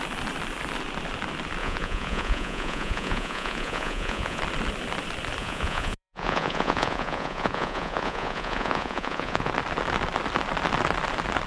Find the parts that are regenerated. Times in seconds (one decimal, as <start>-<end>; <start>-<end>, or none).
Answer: 1.6-4.4; 5.4-9.5